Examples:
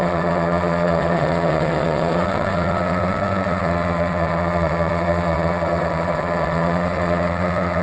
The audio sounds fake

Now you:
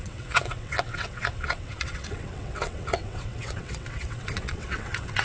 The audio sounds fake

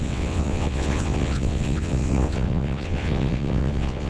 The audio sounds fake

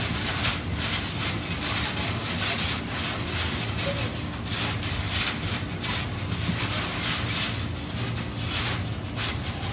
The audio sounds real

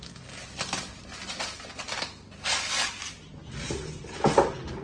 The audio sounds real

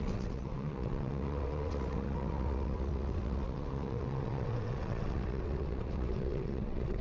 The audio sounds fake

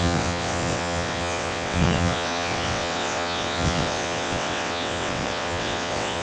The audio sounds fake